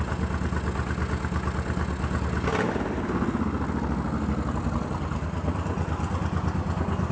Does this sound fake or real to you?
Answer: real